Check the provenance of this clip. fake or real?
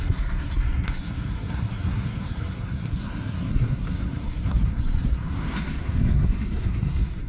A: fake